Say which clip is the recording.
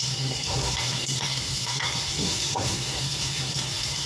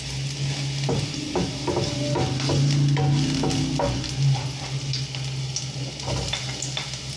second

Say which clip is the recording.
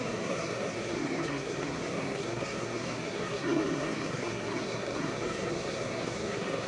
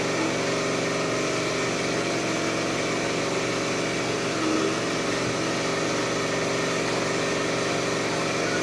second